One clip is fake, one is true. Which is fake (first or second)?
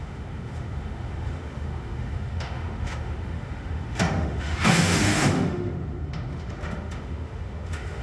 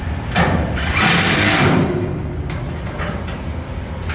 first